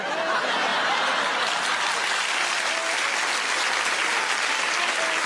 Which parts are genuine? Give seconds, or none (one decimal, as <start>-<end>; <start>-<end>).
0.0-0.7; 1.3-5.3